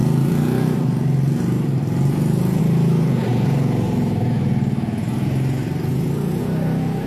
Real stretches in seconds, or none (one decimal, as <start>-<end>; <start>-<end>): 0.0-7.1